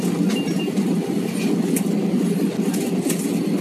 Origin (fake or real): real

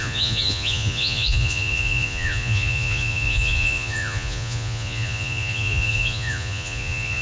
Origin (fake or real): fake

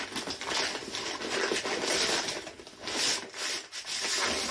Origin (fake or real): real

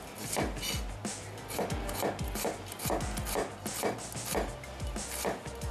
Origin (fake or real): real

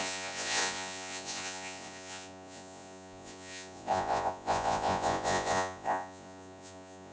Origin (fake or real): fake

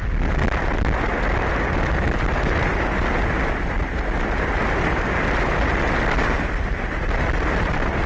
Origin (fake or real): real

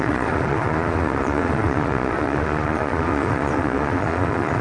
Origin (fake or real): fake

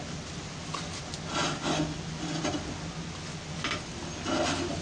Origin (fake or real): real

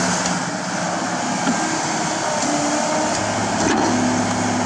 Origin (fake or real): real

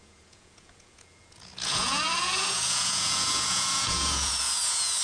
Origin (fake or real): fake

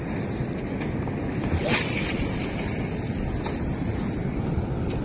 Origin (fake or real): real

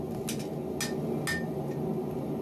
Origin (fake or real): real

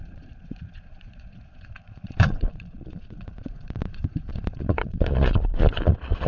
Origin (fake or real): fake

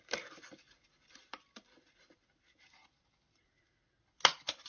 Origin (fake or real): real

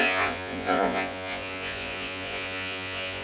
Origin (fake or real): fake